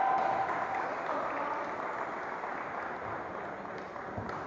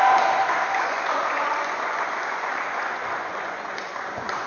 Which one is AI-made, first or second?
second